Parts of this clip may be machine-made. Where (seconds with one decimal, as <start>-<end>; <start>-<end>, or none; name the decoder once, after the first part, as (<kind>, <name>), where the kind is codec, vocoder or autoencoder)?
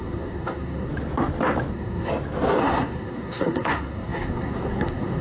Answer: 0.0-0.9 (codec, SNAC); 1.7-2.1; 2.6-5.2